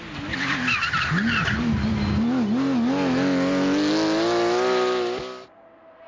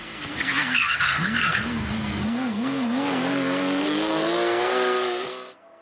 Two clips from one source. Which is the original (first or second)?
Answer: first